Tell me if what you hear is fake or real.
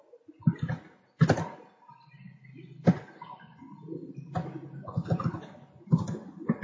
real